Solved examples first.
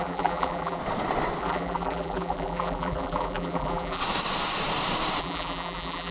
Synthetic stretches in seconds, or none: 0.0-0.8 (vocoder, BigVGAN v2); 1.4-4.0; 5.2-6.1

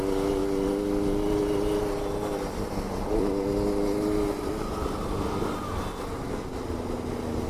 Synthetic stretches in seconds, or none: none

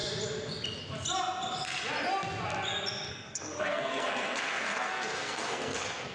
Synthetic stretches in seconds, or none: 3.1-6.1 (codec, SNAC)

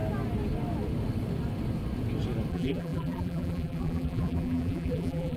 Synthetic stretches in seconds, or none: 2.5-5.4 (vocoder, BigVGAN v2)

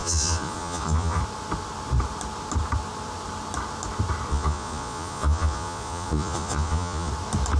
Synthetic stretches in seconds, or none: 0.0-1.2 (vocoder, Vocos); 4.3-7.1

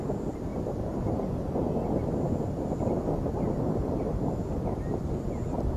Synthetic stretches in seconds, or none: none

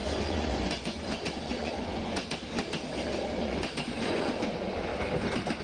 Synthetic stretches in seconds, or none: 0.0-2.4 (vocoder, Vocos); 3.4-4.9

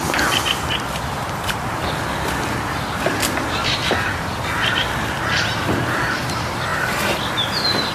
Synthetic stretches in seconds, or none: none